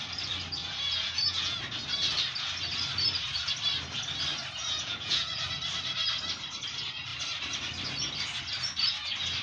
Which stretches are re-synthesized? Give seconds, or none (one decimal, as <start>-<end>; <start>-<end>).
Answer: 0.6-1.6; 4.6-5.4